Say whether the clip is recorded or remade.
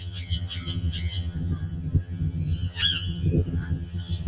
remade